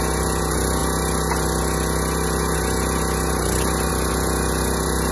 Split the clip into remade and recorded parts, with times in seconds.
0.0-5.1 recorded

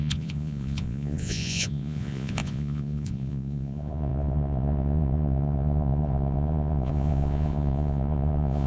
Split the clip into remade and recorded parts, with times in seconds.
0.0-8.7 remade

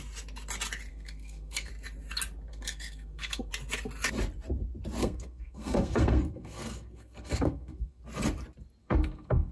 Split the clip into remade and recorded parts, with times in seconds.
0.0-0.9 recorded; 0.9-1.7 remade; 1.7-2.5 recorded; 2.5-3.5 remade; 3.5-5.0 recorded; 5.0-8.0 remade; 8.0-8.8 recorded; 8.8-9.5 remade

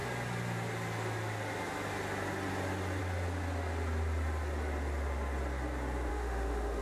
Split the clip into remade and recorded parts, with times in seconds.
0.0-6.1 recorded; 6.1-6.8 remade

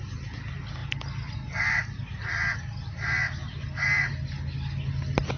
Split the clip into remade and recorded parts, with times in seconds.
0.0-5.4 recorded

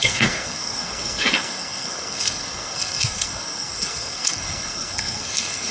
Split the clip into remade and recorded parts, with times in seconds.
0.0-5.7 remade

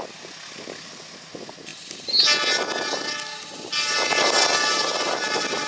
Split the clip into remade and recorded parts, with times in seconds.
0.0-5.7 recorded

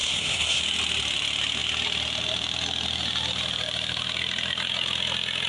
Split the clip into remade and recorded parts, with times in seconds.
0.0-0.6 remade; 0.6-5.5 recorded